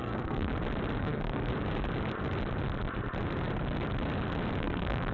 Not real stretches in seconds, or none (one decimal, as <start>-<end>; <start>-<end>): 0.0-0.5; 1.0-1.5; 4.6-5.1